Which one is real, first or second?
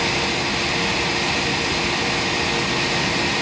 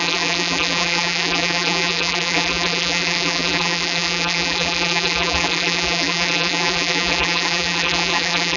first